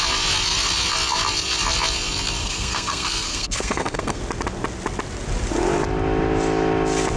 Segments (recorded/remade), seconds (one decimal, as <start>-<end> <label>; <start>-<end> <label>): 0.0-2.4 recorded; 2.4-4.2 remade; 4.2-7.2 recorded